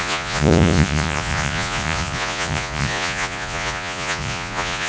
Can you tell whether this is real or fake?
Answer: fake